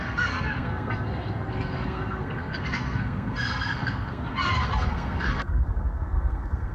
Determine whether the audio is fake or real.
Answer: fake